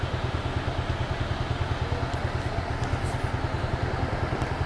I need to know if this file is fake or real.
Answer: real